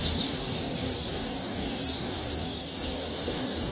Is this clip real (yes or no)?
no